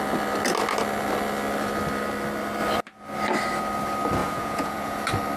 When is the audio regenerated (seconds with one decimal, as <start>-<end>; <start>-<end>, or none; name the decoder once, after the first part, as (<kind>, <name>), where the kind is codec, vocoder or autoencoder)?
4.2-5.0 (vocoder, Vocos)